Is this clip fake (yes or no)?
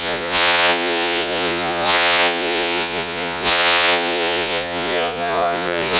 yes